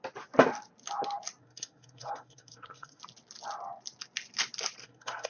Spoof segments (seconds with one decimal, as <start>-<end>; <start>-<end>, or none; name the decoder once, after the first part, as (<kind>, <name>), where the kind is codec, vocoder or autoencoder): 1.4-3.0 (codec, SNAC); 4.8-5.3